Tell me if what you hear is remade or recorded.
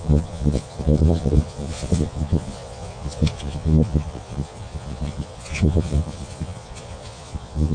remade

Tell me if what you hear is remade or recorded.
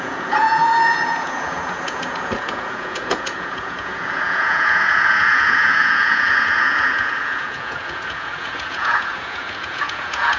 remade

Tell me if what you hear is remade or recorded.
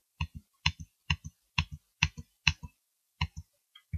recorded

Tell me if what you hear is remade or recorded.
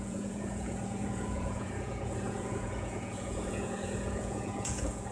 remade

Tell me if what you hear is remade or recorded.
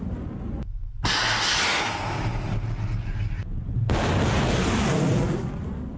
recorded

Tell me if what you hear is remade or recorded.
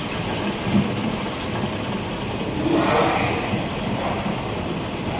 recorded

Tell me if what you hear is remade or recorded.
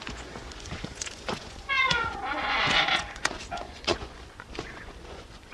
remade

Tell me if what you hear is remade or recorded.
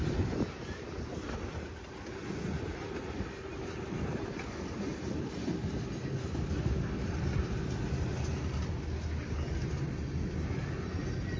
recorded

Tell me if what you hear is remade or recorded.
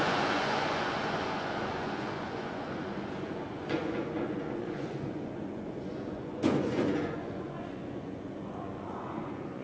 remade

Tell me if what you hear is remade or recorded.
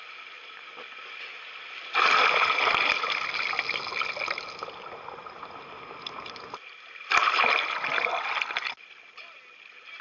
recorded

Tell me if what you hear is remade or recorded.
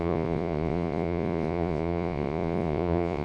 remade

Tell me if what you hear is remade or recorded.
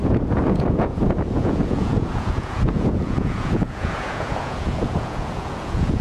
remade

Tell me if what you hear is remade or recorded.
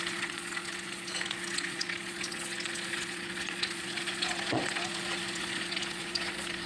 remade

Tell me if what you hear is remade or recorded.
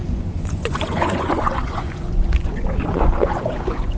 remade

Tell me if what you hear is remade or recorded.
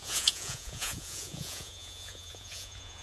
remade